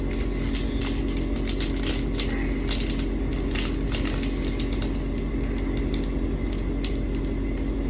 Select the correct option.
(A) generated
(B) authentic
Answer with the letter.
B